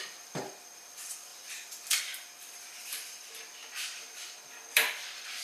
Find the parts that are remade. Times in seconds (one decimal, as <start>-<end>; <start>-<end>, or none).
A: none